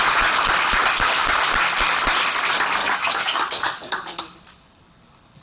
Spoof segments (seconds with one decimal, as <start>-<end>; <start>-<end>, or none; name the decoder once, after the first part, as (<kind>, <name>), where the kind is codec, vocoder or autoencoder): 2.8-4.2 (codec, DAC)